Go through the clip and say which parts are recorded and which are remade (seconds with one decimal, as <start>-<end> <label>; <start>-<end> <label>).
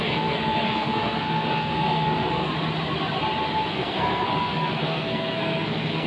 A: 0.0-2.5 remade; 2.5-3.7 recorded; 3.7-6.1 remade